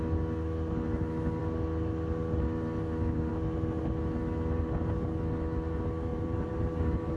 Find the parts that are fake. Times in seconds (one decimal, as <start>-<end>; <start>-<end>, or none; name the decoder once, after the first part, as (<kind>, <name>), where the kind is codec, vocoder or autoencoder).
6.1-7.2 (vocoder, BigVGAN v2)